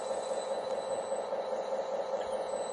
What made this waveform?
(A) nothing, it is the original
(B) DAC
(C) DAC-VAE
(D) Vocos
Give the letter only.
D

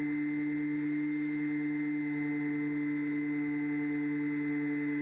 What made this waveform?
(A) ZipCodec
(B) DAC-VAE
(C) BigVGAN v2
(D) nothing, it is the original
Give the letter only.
D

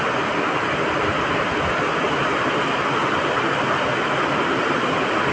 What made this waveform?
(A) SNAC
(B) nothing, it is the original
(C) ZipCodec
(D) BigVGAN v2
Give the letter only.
B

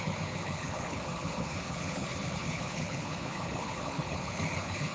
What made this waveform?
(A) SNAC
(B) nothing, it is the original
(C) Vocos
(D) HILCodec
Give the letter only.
D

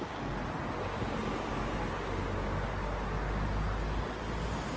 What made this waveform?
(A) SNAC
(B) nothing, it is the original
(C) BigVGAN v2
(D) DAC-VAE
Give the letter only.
B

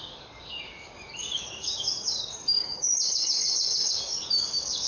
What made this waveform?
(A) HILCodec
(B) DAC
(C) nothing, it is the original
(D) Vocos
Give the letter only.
B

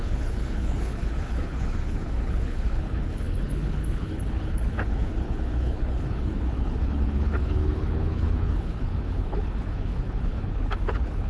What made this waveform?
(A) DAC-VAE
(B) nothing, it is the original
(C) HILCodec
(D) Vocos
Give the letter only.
C